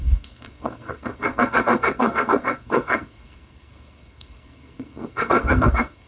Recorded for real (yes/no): no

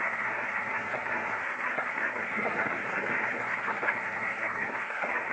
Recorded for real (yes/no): no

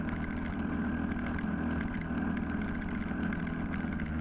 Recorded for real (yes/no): yes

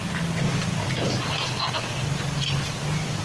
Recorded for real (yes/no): yes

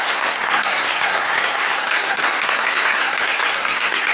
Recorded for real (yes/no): no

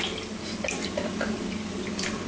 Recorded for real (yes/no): yes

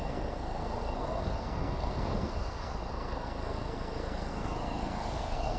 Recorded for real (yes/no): no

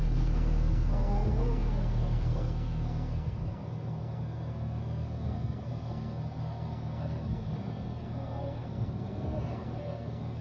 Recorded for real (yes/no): no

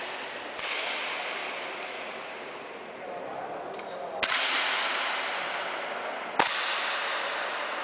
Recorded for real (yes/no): yes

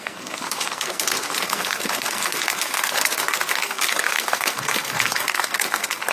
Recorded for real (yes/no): no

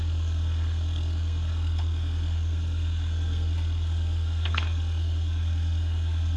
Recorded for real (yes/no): no